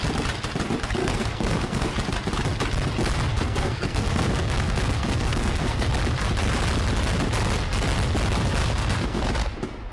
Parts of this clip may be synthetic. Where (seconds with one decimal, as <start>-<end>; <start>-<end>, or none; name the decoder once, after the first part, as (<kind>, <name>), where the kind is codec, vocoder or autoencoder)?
1.0-1.9 (codec, SNAC); 3.3-5.9; 8.6-9.2

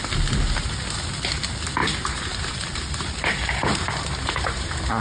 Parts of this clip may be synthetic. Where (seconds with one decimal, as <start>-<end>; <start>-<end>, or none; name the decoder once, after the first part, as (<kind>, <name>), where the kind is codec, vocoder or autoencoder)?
1.8-5.0 (vocoder, BigVGAN v2)

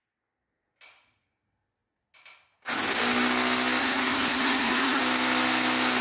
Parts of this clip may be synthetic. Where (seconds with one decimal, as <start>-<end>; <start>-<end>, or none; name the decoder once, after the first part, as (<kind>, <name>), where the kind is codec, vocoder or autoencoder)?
3.8-5.0 (codec, SNAC)

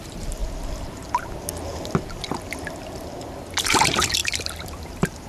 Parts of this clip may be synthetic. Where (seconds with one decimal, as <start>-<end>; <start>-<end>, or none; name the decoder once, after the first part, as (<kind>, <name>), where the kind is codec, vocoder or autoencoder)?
0.0-0.4 (vocoder, BigVGAN v2); 3.6-5.3

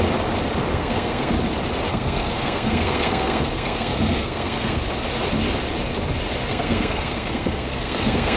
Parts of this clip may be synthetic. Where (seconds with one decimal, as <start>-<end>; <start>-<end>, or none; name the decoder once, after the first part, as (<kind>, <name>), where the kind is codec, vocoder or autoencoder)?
0.7-1.3 (codec, SNAC); 1.9-4.8; 6.5-8.4